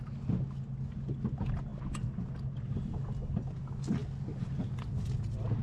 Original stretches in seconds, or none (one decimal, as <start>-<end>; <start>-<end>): 0.0-5.6